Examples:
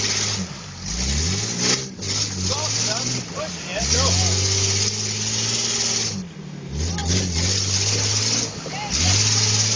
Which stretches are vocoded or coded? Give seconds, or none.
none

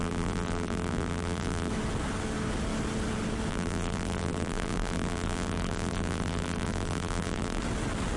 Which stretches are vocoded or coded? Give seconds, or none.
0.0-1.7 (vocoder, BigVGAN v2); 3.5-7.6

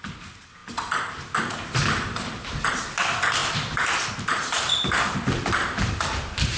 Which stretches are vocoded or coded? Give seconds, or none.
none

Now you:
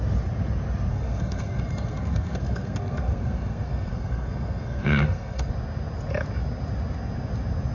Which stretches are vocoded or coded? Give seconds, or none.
0.9-5.5 (codec, SNAC)